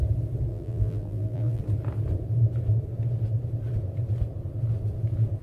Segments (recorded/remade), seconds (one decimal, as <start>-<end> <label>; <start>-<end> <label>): 0.0-0.5 recorded; 0.5-1.6 remade; 1.6-5.4 recorded